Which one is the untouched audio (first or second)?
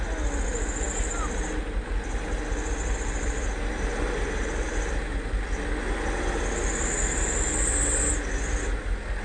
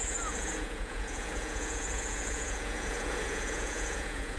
first